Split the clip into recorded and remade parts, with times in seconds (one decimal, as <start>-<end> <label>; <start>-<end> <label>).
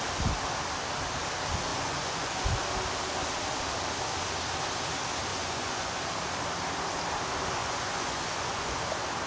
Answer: 0.0-1.7 recorded; 1.7-2.6 remade; 2.6-5.3 recorded; 5.3-6.0 remade; 6.0-7.6 recorded; 7.6-8.8 remade; 8.8-9.3 recorded